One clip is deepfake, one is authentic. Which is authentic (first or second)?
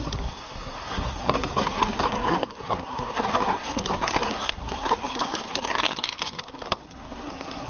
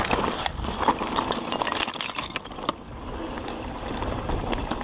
second